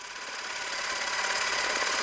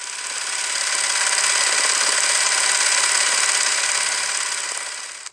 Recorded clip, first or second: second